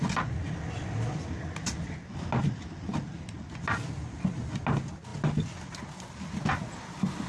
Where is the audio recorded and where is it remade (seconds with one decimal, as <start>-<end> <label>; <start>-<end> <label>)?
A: 0.0-7.3 recorded